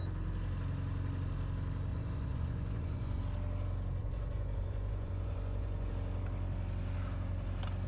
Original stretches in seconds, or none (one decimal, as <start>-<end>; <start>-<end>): 0.0-1.9; 3.2-4.0; 5.9-7.9